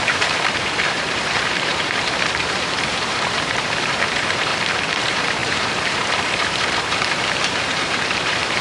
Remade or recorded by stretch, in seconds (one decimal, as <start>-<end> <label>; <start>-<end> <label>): 0.0-4.5 remade; 4.5-5.0 recorded; 5.0-8.6 remade

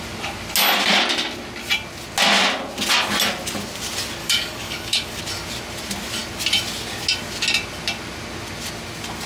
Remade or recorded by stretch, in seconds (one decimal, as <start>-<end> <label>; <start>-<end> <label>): 0.0-4.2 recorded; 4.2-5.2 remade; 5.2-9.3 recorded

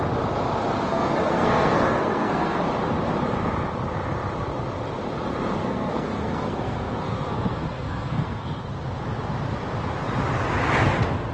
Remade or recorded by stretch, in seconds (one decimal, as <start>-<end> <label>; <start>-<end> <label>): 0.0-0.9 recorded; 0.9-2.6 remade; 2.6-5.6 recorded; 5.6-8.6 remade; 8.6-11.3 recorded

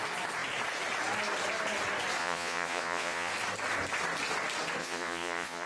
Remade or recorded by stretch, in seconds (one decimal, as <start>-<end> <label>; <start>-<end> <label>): 0.0-2.2 recorded; 2.2-3.3 remade; 3.3-4.8 recorded; 4.8-5.7 remade

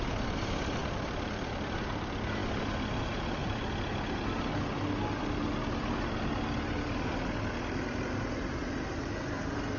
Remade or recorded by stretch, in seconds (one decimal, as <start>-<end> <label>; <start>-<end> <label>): 0.0-9.8 recorded

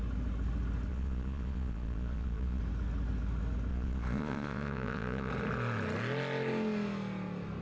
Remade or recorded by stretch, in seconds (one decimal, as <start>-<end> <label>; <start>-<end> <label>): 0.0-0.9 recorded; 0.9-2.6 remade; 2.6-3.7 recorded; 3.7-5.3 remade; 5.3-7.6 recorded

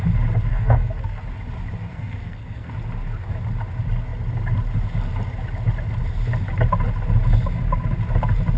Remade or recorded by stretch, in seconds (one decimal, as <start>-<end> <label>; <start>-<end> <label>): 0.0-0.5 recorded; 0.5-1.2 remade; 1.2-1.9 recorded; 1.9-2.7 remade; 2.7-8.6 recorded

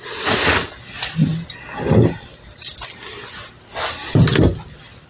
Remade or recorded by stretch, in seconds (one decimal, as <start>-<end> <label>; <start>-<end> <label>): 0.0-5.1 recorded